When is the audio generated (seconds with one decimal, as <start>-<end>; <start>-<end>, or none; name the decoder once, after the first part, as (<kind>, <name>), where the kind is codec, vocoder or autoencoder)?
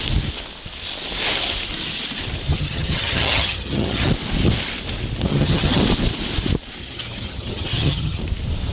2.5-4.1 (vocoder, HiFi-GAN); 5.3-5.8; 6.8-8.2